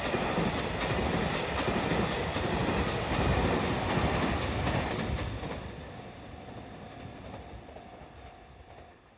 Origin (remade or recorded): recorded